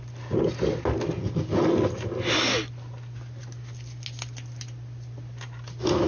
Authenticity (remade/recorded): recorded